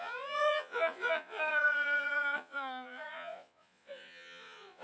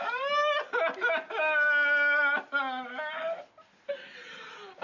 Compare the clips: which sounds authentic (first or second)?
second